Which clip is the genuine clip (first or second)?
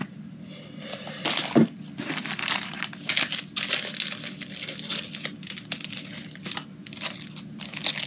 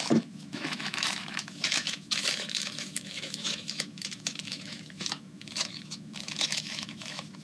first